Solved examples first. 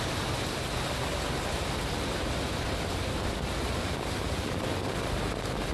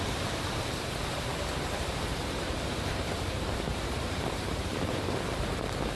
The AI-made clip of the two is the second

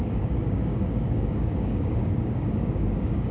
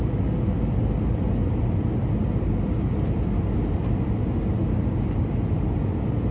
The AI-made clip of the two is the first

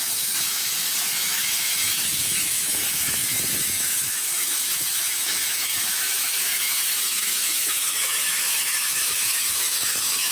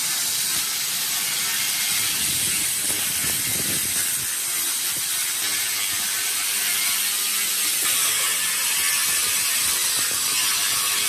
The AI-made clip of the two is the first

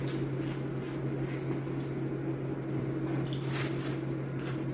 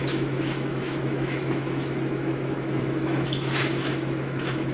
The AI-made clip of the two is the second